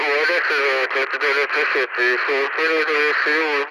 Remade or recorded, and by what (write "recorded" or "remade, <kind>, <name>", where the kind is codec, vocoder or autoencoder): recorded